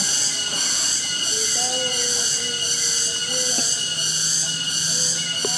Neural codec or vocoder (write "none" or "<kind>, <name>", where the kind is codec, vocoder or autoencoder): none